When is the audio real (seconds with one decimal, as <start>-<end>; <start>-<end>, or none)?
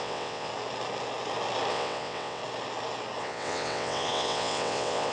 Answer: 0.5-1.7; 2.4-3.2